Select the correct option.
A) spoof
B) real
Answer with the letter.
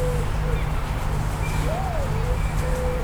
B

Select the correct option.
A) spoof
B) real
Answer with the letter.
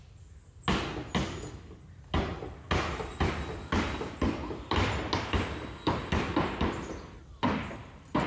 B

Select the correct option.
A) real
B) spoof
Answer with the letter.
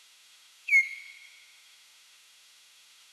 B